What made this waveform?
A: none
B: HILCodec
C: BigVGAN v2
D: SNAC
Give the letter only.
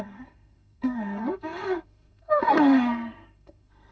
D